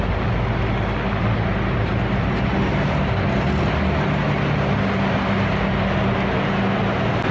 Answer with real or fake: real